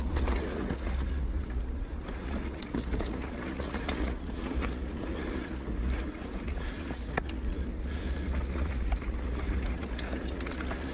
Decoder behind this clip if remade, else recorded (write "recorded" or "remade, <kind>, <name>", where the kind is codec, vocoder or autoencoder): remade, vocoder, Vocos